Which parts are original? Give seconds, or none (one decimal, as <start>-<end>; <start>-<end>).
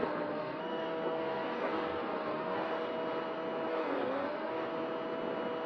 2.7-3.7; 4.7-5.7